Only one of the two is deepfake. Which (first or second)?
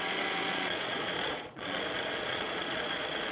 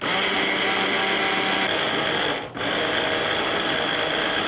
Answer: first